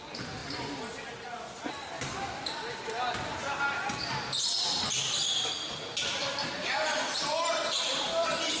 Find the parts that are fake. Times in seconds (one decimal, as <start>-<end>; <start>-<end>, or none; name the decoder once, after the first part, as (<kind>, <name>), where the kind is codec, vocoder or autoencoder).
6.2-8.6 (vocoder, BigVGAN v2)